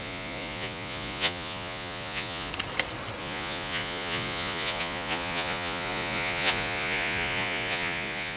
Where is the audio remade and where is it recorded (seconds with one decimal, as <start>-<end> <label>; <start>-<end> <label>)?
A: 0.0-2.5 remade; 2.5-3.2 recorded; 3.2-8.4 remade